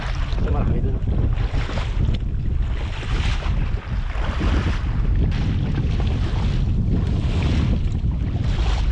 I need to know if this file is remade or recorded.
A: recorded